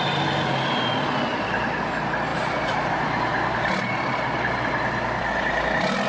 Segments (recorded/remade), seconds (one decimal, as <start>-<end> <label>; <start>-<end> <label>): 0.0-2.3 recorded; 2.3-2.9 remade; 2.9-6.1 recorded